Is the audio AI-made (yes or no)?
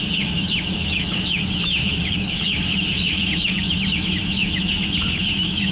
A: yes